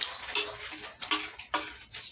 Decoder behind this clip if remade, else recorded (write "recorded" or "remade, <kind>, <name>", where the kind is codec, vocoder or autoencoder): recorded